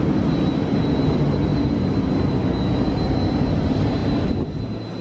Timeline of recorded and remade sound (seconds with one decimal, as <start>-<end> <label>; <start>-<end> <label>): 0.0-5.0 recorded